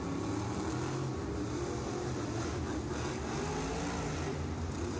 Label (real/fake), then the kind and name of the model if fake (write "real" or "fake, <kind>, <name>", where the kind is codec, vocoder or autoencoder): real